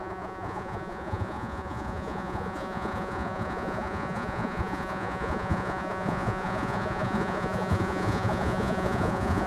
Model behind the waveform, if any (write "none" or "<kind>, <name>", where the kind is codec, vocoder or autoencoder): vocoder, Vocos